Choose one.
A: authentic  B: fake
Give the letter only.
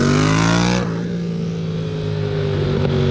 A